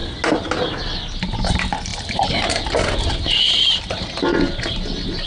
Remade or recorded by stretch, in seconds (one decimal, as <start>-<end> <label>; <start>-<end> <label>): 0.0-5.3 recorded

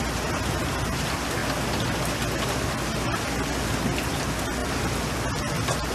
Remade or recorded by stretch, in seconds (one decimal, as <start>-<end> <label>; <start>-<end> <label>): 0.0-5.9 recorded

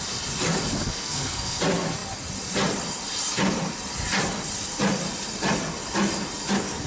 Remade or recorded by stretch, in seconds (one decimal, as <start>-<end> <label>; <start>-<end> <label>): 0.0-0.7 recorded; 0.7-1.6 remade; 1.6-6.9 recorded

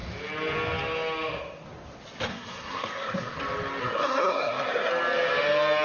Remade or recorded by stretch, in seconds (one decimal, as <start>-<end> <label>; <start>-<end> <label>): 0.0-2.3 recorded; 2.3-3.4 remade; 3.4-3.8 recorded; 3.8-4.9 remade; 4.9-5.8 recorded

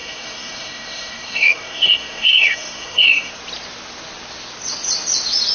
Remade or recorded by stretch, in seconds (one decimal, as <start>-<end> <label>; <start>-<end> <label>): 0.0-3.3 remade; 3.3-5.5 recorded

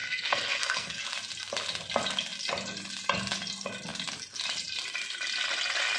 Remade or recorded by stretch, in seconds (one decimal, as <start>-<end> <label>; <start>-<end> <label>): 0.0-1.0 remade; 1.0-6.0 recorded

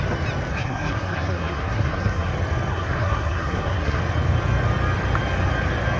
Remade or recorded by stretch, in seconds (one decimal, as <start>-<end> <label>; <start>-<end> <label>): 0.0-0.5 recorded; 0.5-2.3 remade; 2.3-2.7 recorded; 2.7-4.0 remade; 4.0-6.0 recorded

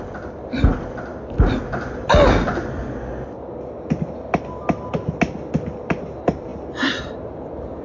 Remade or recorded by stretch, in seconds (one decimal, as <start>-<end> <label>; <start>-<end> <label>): 0.0-7.8 recorded